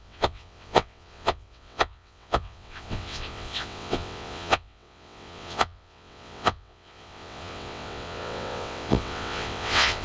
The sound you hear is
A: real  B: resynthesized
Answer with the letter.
B